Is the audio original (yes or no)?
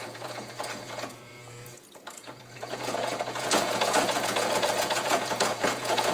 no